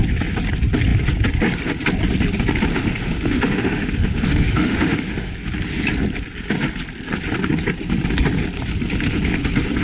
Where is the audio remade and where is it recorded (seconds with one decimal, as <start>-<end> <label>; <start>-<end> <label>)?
0.0-2.7 recorded; 2.7-5.3 remade; 5.3-9.8 recorded